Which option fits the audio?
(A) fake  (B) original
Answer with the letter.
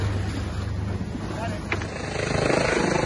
B